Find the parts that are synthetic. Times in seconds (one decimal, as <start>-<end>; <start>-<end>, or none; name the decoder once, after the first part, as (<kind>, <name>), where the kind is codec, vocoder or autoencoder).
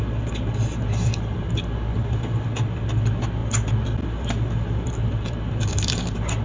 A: none